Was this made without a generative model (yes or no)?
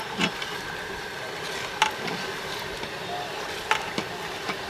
yes